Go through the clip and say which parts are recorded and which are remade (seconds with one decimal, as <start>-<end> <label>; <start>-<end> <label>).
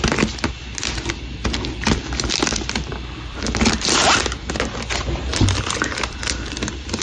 0.0-2.5 recorded; 2.5-3.9 remade; 3.9-5.3 recorded; 5.3-7.0 remade